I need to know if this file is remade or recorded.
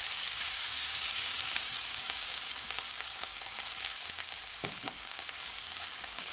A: remade